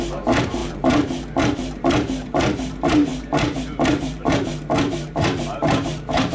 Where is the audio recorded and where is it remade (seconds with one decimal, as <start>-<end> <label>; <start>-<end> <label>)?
0.0-6.3 remade